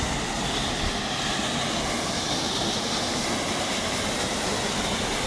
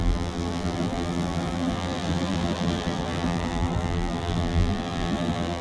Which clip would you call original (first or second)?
first